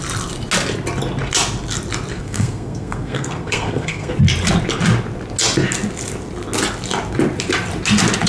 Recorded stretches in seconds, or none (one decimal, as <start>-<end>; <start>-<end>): 0.0-2.1; 4.1-8.3